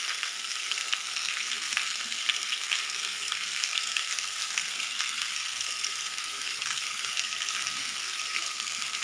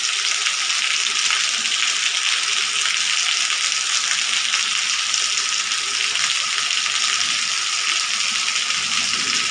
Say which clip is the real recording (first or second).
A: second